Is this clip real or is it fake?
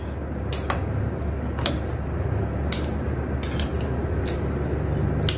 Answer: real